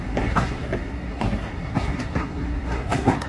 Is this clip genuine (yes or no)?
no